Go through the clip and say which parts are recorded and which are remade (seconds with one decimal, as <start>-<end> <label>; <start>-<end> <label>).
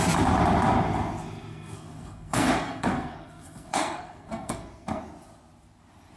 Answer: 0.0-1.5 recorded; 1.5-5.0 remade; 5.0-6.2 recorded